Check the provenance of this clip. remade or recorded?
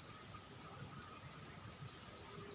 recorded